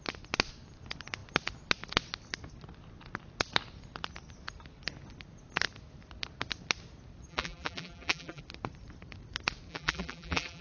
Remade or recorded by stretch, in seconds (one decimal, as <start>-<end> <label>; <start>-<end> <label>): 0.0-7.3 recorded; 7.3-8.4 remade; 8.4-9.7 recorded; 9.7-10.6 remade